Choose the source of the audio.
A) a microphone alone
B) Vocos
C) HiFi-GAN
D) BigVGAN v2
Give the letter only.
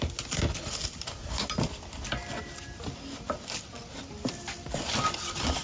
A